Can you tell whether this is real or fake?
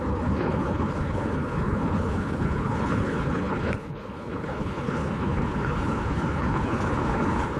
fake